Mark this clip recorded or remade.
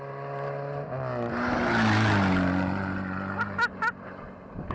recorded